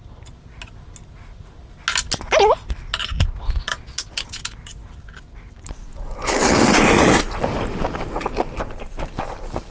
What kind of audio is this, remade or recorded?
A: recorded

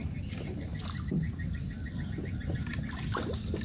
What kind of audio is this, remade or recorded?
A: recorded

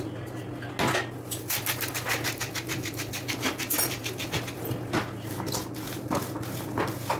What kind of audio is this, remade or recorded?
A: recorded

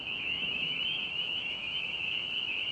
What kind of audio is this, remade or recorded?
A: remade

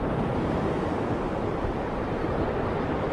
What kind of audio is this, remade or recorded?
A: recorded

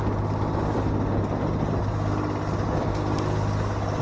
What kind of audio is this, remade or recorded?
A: recorded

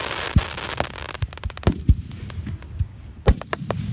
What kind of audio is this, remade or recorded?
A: recorded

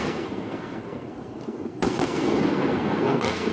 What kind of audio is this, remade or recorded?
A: remade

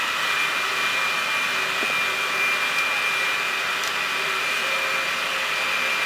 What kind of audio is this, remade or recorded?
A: recorded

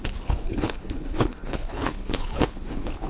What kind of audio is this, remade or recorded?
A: remade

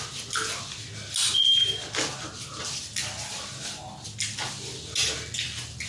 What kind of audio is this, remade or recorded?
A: recorded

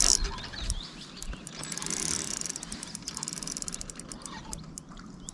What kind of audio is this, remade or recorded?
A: recorded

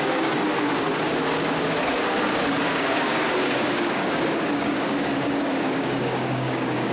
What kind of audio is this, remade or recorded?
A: remade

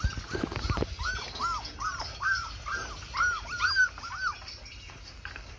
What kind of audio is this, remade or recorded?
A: recorded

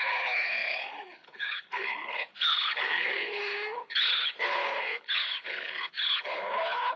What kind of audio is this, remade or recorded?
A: remade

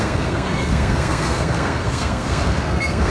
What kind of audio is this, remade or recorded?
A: remade